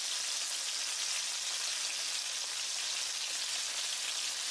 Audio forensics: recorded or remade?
recorded